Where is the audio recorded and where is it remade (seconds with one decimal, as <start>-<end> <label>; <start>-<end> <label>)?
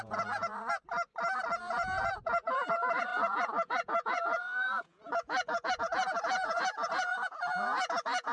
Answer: 0.0-0.5 remade; 0.5-1.6 recorded; 1.6-8.3 remade